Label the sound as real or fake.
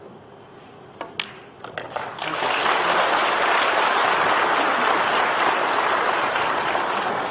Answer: real